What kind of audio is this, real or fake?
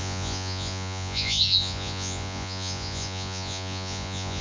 fake